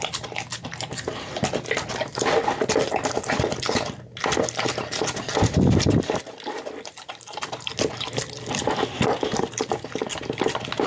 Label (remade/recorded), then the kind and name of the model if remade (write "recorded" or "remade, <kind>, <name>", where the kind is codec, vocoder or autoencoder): recorded